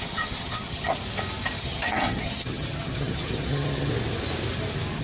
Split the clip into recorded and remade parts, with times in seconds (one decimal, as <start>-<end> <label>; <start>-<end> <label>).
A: 0.0-0.9 remade; 0.9-1.6 recorded; 1.6-3.9 remade; 3.9-5.0 recorded